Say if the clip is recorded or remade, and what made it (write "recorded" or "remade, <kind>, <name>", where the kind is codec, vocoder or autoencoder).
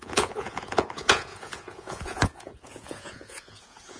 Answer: remade, vocoder, Vocos